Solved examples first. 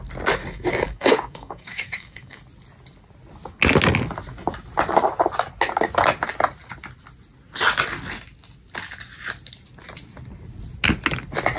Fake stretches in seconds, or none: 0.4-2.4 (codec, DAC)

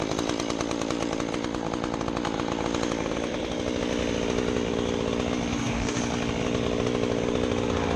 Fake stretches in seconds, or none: 5.5-6.0 (codec, DAC)

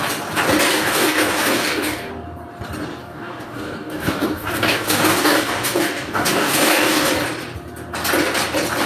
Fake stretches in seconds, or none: 0.7-2.1 (codec, DAC); 3.0-7.1

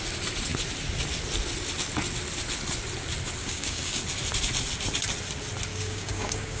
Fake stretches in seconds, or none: 3.4-4.0 (codec, DAC); 5.7-6.6

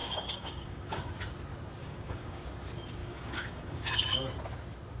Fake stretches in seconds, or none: 0.0-1.1 (codec, DAC); 1.8-2.4; 3.0-3.9

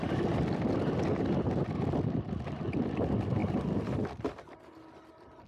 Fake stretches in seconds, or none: none

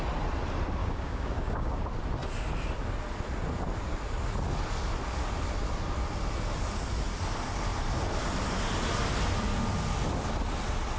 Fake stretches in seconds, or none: 0.8-1.8 (codec, DAC)